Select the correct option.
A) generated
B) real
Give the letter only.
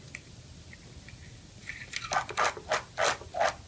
B